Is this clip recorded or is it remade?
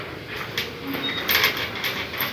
recorded